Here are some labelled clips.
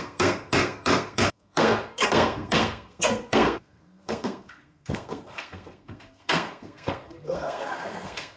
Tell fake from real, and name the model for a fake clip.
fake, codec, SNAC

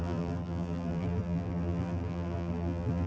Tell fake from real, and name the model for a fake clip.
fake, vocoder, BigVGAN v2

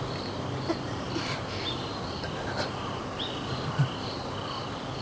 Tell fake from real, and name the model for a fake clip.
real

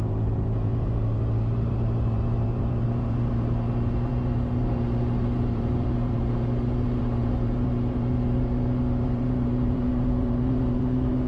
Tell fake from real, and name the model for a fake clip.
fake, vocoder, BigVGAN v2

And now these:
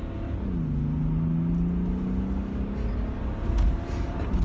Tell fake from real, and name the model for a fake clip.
real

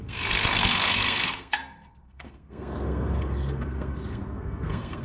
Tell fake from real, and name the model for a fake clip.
fake, codec, SNAC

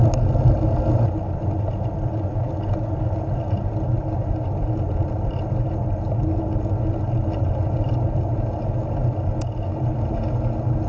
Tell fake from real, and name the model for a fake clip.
real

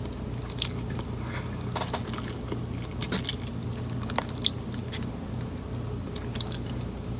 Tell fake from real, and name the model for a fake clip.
real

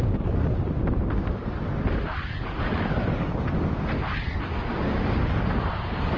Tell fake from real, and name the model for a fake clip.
real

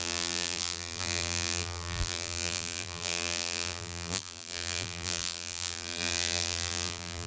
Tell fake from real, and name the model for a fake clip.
fake, vocoder, BigVGAN v2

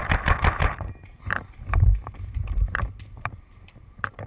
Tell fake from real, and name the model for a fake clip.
fake, vocoder, BigVGAN v2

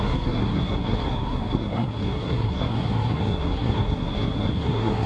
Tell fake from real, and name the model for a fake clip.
fake, codec, SNAC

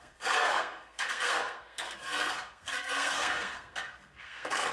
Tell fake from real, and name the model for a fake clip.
fake, codec, SNAC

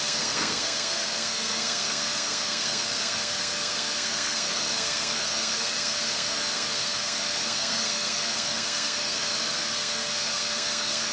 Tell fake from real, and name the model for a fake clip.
fake, codec, SNAC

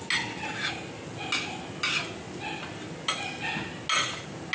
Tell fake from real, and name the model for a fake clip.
real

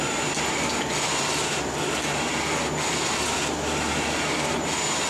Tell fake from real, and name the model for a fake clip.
real